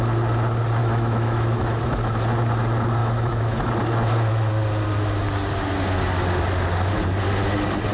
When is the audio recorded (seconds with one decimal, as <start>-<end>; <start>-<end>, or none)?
0.0-0.8; 2.0-3.0; 3.7-7.9